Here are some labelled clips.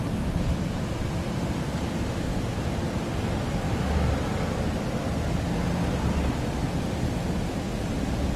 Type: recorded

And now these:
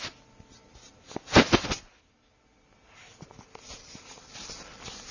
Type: recorded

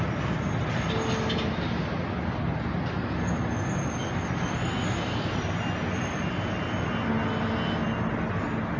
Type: recorded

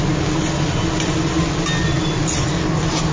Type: recorded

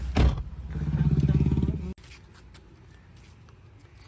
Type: recorded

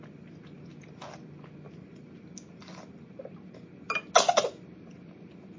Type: recorded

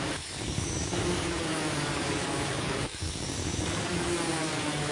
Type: remade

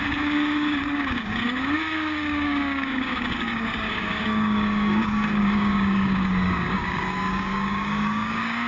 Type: remade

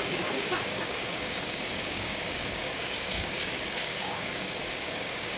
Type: remade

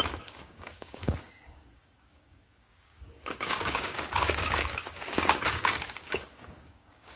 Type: remade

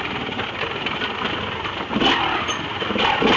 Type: recorded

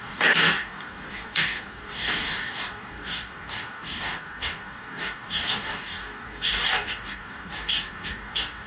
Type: remade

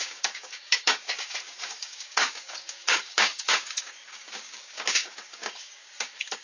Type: remade